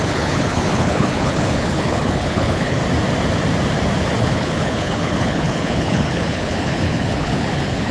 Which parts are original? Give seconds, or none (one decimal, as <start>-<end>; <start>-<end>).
2.8-4.2